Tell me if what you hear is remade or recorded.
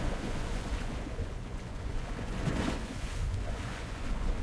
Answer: remade